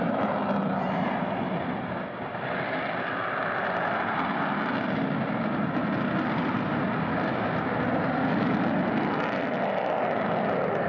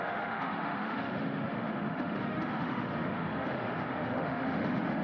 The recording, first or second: first